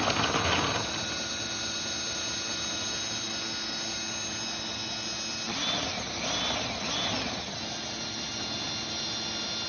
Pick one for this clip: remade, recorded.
recorded